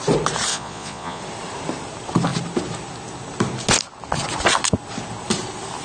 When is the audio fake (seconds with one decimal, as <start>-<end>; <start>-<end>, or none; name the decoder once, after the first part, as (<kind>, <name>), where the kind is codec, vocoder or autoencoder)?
0.5-1.2 (vocoder, Vocos)